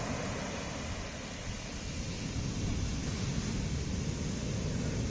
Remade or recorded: recorded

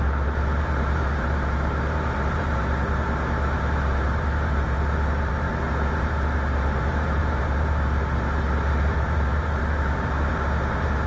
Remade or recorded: remade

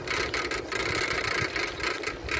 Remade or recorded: recorded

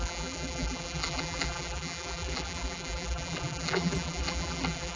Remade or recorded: remade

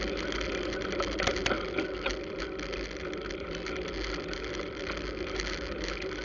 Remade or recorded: recorded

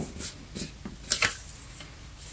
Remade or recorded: recorded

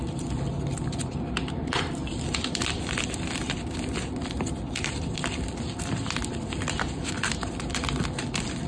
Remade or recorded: remade